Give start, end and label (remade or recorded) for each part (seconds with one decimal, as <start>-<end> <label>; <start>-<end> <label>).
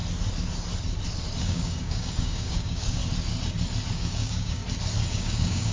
0.0-1.4 recorded; 1.4-3.0 remade; 3.0-3.9 recorded; 3.9-4.6 remade; 4.6-5.1 recorded; 5.1-5.7 remade